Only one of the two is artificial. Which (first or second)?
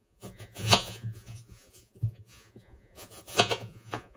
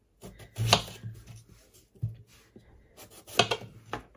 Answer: first